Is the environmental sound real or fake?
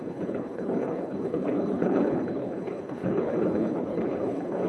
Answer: fake